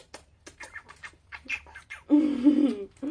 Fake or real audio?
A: real